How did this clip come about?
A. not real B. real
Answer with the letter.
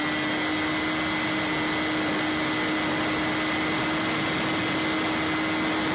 B